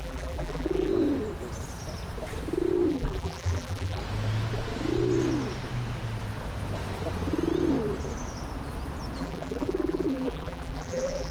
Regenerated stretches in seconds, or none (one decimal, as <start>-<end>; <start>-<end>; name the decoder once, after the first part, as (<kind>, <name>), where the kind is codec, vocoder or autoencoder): 0.0-0.9 (vocoder, BigVGAN v2); 2.9-4.0; 9.2-11.3